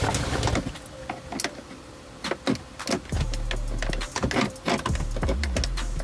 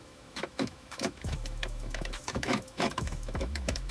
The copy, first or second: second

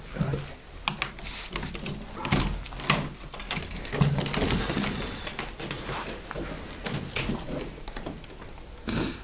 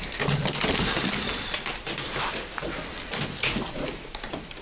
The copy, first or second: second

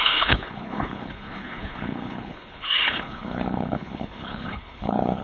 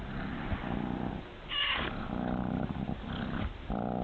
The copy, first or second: first